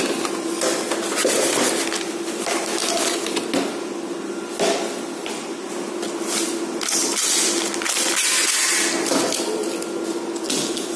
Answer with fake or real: real